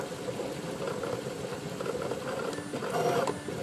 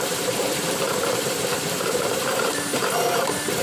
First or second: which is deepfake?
second